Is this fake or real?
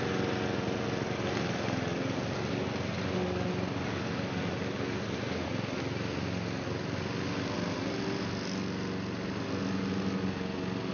real